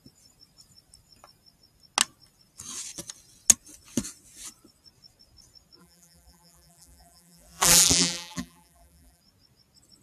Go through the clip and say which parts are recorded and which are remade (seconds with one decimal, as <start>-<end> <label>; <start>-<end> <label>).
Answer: 0.0-5.8 recorded; 5.8-9.2 remade; 9.2-10.0 recorded

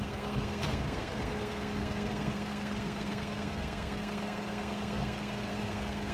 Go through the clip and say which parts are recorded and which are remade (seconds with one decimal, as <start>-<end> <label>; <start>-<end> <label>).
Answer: 0.0-6.1 remade

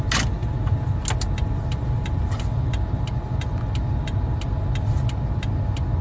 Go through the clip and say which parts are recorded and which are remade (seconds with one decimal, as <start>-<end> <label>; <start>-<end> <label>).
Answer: 0.0-6.0 recorded

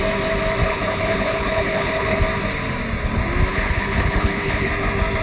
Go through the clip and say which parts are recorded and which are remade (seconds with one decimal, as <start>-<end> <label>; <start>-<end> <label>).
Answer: 0.0-0.6 recorded; 0.6-2.2 remade; 2.2-3.5 recorded; 3.5-4.7 remade; 4.7-5.2 recorded

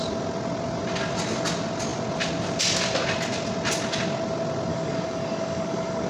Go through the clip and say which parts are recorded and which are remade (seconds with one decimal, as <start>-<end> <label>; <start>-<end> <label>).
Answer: 0.0-4.7 recorded; 4.7-6.1 remade

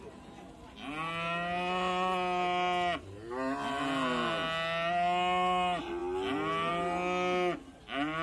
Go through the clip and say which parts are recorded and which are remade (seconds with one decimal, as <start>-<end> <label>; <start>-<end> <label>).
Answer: 0.0-8.2 recorded

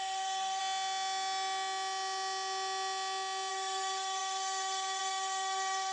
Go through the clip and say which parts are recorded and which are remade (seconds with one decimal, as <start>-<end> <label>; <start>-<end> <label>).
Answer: 0.0-0.6 remade; 0.6-3.5 recorded; 3.5-5.9 remade

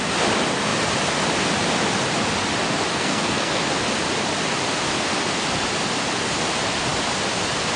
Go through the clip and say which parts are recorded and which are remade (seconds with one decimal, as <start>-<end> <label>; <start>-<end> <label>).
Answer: 0.0-2.9 recorded; 2.9-3.6 remade; 3.6-7.8 recorded